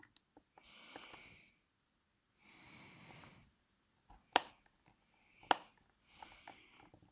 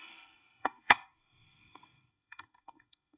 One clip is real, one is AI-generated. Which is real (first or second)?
first